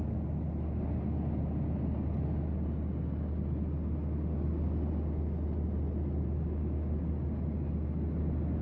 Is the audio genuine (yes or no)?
yes